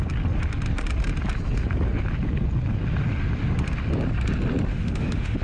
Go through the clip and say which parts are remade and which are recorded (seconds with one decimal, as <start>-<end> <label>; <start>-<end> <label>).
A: 0.0-4.7 recorded; 4.7-5.4 remade